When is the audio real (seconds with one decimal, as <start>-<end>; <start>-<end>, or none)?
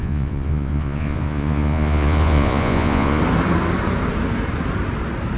3.2-5.4